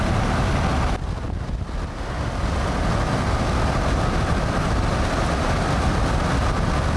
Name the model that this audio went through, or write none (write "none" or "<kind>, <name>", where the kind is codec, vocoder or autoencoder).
none